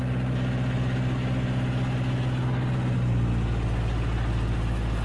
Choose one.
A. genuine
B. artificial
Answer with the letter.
A